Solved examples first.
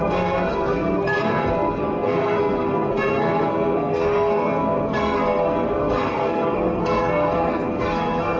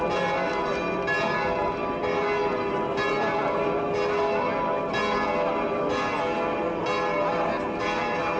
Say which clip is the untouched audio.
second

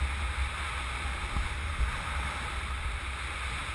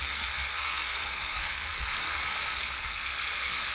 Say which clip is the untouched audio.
first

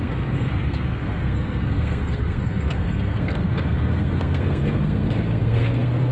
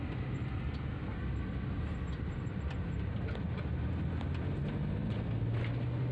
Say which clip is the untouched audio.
second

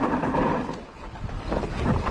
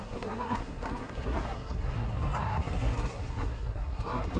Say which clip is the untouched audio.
first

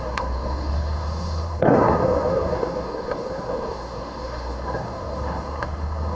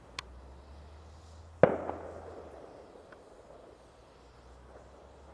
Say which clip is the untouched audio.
second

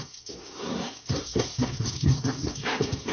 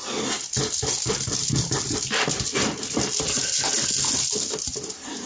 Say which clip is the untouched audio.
second